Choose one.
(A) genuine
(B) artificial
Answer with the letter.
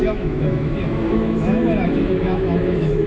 B